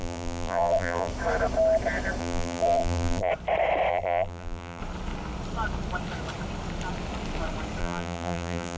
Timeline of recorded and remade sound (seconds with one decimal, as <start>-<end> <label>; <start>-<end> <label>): 0.0-1.1 remade; 1.1-2.2 recorded; 2.2-3.3 remade; 3.3-3.9 recorded; 3.9-4.8 remade; 4.8-7.8 recorded; 7.8-8.8 remade